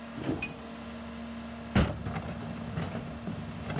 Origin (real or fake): real